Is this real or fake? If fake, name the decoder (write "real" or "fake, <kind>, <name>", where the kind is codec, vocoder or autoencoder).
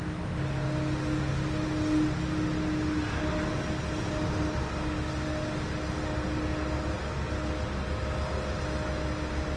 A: real